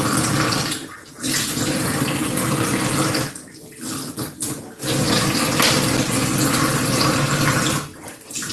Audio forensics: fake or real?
real